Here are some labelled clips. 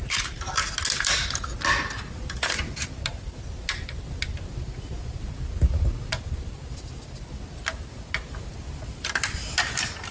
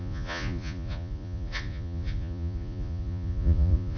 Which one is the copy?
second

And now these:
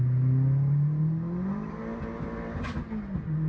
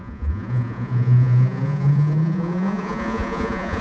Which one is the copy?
second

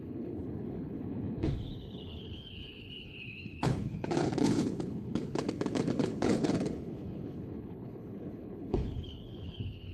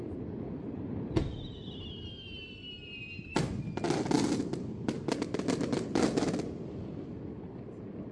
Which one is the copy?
first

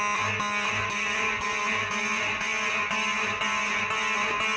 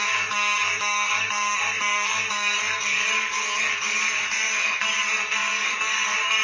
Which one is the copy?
second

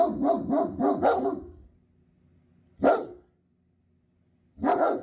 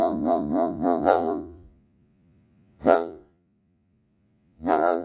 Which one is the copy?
second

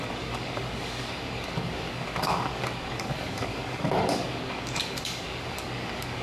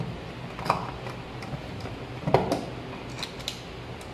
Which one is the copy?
first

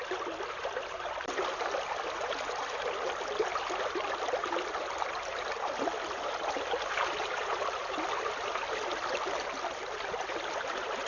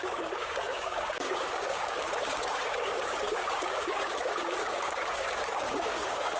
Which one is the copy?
second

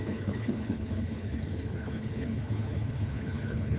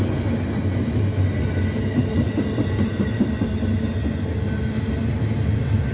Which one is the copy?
first